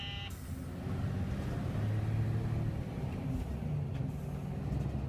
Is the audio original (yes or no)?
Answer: yes